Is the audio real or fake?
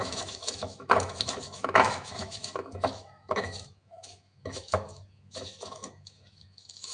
fake